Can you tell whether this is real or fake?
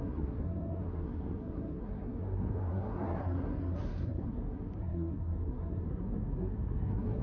fake